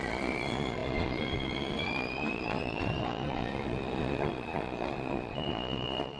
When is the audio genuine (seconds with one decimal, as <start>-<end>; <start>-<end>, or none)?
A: none